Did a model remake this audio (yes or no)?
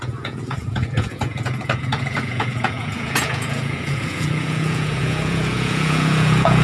yes